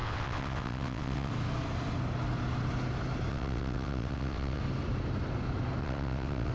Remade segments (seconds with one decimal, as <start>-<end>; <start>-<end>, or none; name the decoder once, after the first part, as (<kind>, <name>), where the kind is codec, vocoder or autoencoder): 0.0-1.3 (vocoder, WaveNeXt); 3.3-4.6; 5.8-6.5